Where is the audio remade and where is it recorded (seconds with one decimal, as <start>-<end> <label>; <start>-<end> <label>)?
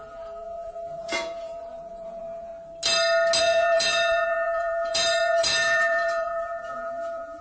0.0-2.5 remade; 2.5-3.4 recorded; 3.4-7.4 remade